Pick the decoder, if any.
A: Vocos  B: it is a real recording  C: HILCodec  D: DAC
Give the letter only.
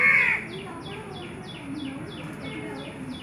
B